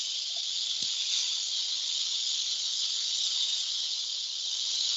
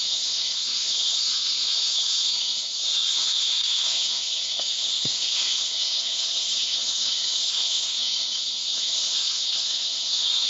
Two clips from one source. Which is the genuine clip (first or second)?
first